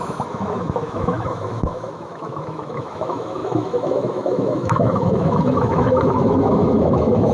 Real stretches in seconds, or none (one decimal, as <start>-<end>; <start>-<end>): none